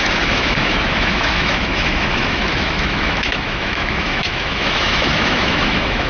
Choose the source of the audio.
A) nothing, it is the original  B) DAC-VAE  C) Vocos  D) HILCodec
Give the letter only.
B